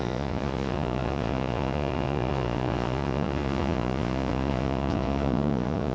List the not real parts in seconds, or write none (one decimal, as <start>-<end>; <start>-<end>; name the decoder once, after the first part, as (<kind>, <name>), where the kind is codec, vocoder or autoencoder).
0.0-5.9 (vocoder, Vocos)

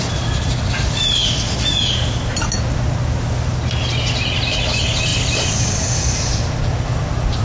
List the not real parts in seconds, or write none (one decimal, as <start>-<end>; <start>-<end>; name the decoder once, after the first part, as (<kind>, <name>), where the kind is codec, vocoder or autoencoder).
none

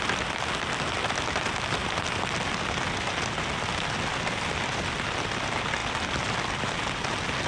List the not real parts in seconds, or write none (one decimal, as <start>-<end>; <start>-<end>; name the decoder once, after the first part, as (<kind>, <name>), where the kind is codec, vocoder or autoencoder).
none

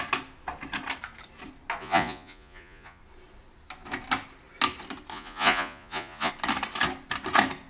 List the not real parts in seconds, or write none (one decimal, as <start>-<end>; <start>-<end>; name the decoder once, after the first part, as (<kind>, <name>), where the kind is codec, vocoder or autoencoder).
1.8-3.0 (vocoder, Vocos); 5.1-6.3

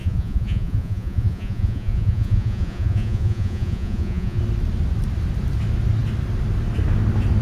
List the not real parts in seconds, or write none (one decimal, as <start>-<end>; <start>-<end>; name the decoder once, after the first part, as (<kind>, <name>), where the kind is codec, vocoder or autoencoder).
0.0-4.4 (vocoder, Vocos)

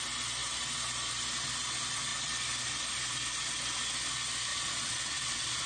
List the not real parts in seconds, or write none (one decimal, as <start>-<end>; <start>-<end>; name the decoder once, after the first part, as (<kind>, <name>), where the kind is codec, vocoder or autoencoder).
4.5-5.7 (vocoder, Vocos)

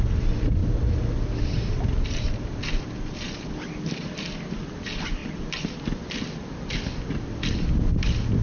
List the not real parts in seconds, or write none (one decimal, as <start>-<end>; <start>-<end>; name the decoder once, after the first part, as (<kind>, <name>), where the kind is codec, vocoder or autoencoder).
none